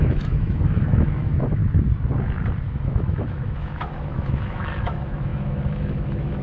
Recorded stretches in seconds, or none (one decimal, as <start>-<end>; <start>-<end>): 1.6-2.7